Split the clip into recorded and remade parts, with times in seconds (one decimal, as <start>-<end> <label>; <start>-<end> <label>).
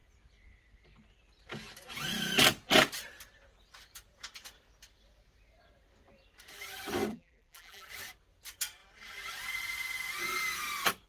0.0-7.1 recorded; 7.1-7.9 remade; 7.9-11.1 recorded